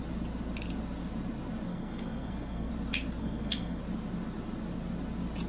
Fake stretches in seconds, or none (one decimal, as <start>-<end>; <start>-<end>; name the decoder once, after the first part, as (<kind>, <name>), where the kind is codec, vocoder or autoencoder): 1.7-2.7 (codec, SNAC); 3.2-3.8